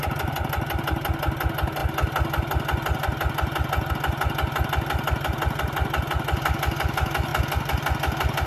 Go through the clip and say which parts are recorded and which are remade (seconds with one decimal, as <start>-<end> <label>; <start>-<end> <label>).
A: 0.0-8.5 recorded